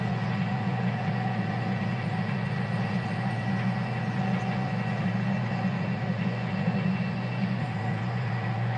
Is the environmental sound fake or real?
fake